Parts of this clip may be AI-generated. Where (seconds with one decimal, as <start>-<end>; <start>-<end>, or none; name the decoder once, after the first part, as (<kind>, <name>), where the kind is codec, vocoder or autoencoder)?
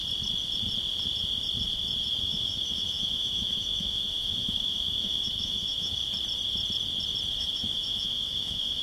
2.2-6.0 (autoencoder, DAC-VAE); 7.3-8.8